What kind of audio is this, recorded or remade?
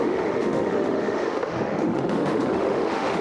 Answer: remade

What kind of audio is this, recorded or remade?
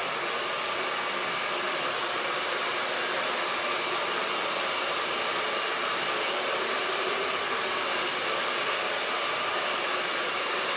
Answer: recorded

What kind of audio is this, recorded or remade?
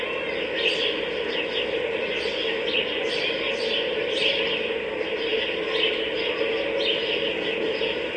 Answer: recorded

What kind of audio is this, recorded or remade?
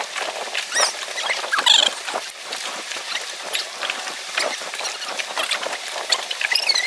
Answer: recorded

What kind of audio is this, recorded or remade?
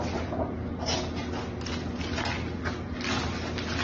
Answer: recorded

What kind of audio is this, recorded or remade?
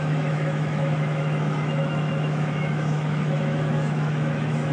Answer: remade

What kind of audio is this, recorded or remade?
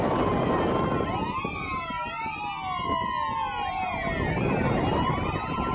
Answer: recorded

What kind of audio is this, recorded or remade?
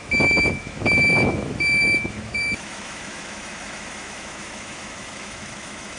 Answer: remade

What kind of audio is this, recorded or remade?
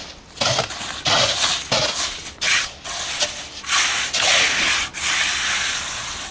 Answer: recorded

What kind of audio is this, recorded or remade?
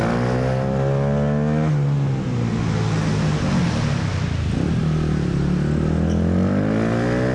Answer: recorded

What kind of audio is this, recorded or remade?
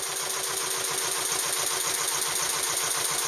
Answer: recorded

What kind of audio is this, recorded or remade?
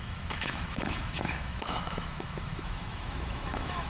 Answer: remade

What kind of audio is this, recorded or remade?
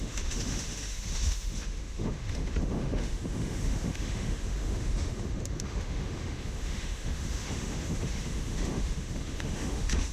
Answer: remade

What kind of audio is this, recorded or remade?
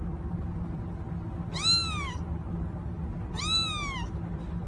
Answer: recorded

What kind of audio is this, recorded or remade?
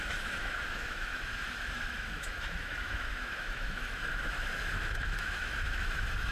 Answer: remade